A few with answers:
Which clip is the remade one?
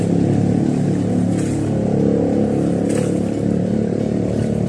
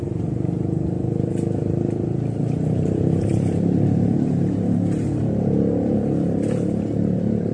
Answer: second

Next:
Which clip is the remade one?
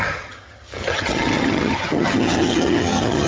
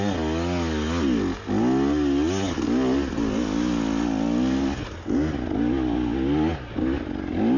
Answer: first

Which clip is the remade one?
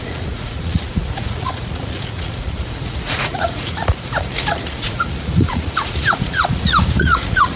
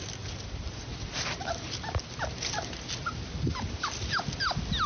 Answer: first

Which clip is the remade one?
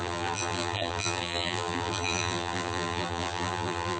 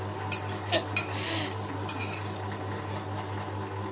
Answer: first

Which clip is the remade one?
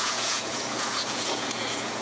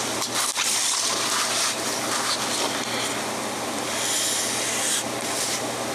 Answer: first